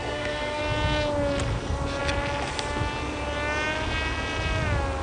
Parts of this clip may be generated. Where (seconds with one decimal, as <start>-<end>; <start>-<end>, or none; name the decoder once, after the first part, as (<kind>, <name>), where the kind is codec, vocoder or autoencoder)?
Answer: 0.0-0.6 (codec, SNAC)